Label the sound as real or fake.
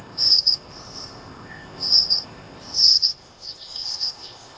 fake